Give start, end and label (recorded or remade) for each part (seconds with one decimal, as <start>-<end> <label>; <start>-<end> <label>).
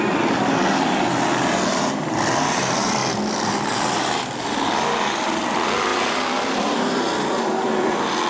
0.0-3.0 remade; 3.0-3.5 recorded; 3.5-8.3 remade